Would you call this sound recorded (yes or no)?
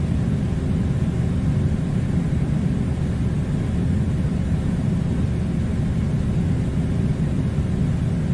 yes